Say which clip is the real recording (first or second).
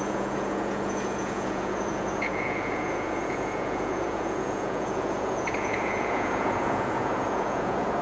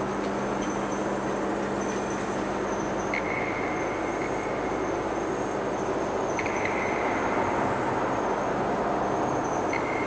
second